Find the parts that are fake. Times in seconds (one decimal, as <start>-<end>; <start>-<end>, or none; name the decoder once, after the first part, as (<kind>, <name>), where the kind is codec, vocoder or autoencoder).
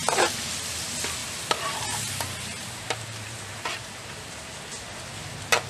1.2-4.6 (vocoder, BigVGAN v2)